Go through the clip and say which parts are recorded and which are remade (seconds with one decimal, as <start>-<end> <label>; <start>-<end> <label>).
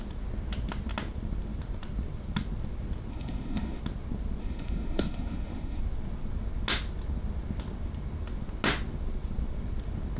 0.0-3.1 recorded; 3.1-3.8 remade; 3.8-4.4 recorded; 4.4-5.8 remade; 5.8-10.2 recorded